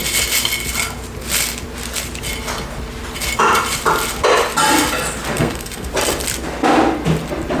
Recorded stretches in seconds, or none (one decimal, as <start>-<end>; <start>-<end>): 0.0-5.3; 5.9-7.6